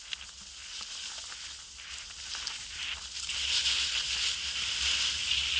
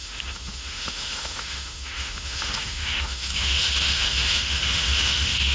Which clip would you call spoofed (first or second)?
second